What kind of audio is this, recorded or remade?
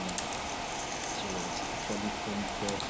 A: recorded